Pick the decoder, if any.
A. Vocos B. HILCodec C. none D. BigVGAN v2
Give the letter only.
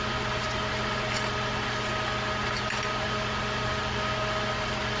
C